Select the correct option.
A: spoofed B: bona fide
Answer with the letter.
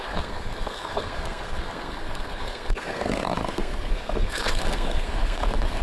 A